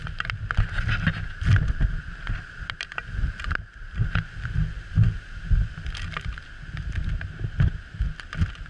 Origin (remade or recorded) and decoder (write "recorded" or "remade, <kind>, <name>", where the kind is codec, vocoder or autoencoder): recorded